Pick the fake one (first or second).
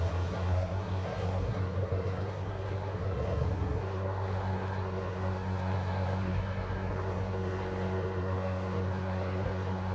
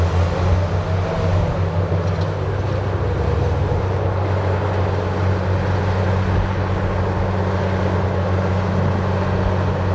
first